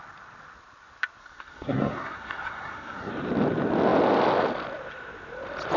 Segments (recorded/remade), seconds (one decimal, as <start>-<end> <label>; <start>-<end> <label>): 0.0-1.2 recorded; 1.2-3.1 remade; 3.1-5.8 recorded